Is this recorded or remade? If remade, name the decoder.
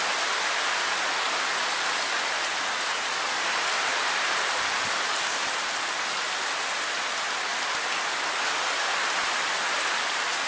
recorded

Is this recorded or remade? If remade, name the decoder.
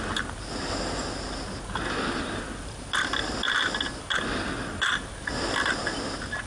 recorded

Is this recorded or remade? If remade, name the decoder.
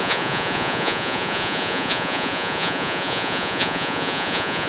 remade, vocoder, Vocos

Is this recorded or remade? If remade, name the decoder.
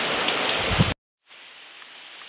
recorded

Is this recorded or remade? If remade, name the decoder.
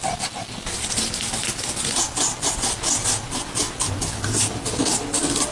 recorded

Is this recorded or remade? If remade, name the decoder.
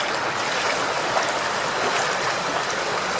recorded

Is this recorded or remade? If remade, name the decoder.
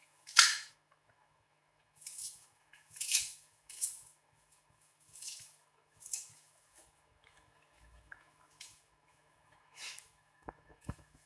remade, autoencoder, DAC-VAE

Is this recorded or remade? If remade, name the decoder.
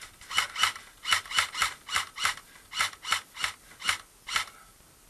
recorded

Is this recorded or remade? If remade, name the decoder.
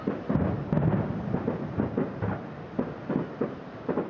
recorded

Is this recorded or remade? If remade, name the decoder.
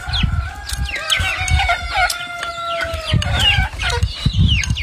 recorded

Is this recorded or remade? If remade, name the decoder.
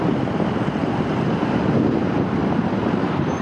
recorded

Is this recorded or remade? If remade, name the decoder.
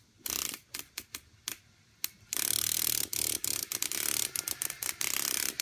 recorded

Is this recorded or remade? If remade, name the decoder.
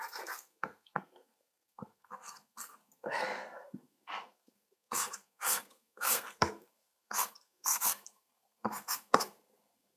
remade, codec, SNAC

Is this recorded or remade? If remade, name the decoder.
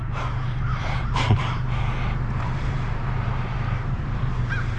remade, vocoder, BigVGAN v2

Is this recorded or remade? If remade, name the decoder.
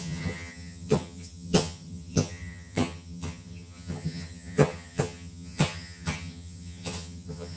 remade, vocoder, HiFi-GAN